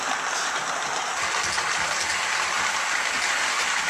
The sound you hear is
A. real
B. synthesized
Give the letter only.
A